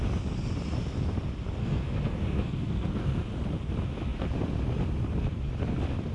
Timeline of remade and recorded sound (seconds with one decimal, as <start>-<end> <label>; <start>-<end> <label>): 0.0-1.6 recorded; 1.6-3.2 remade; 3.2-6.1 recorded